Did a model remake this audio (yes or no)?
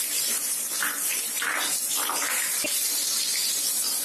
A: yes